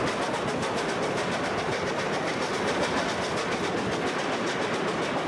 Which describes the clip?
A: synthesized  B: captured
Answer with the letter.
B